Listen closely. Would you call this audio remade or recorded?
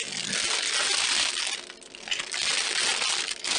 recorded